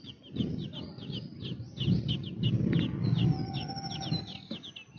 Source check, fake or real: real